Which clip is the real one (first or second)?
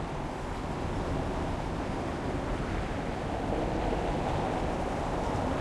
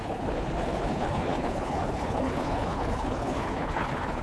first